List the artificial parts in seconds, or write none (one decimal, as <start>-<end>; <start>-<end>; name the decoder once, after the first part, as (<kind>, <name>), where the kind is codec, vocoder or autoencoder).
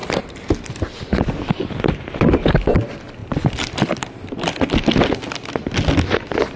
1.1-2.3 (vocoder, BigVGAN v2); 3.2-4.0